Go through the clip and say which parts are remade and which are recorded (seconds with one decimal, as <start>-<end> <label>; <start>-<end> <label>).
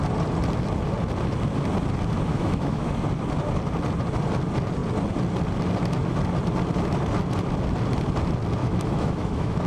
0.0-2.3 recorded; 2.3-2.9 remade; 2.9-8.6 recorded; 8.6-9.7 remade